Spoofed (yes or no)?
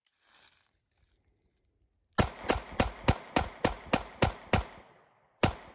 no